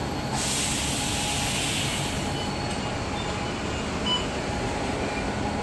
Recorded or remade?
recorded